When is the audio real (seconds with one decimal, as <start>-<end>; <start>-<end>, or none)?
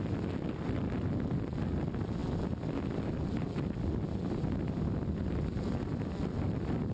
0.0-6.9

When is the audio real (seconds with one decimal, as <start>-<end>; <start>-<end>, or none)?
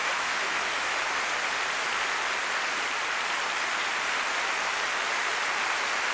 1.2-6.1